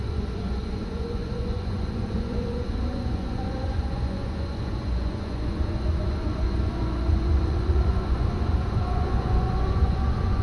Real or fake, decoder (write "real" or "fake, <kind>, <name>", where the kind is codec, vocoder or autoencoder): fake, vocoder, Vocos